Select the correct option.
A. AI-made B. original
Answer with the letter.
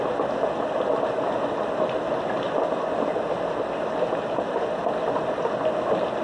B